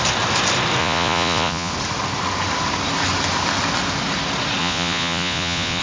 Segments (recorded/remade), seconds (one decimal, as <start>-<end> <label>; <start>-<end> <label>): 0.0-0.8 recorded; 0.8-1.7 remade; 1.7-4.6 recorded; 4.6-5.8 remade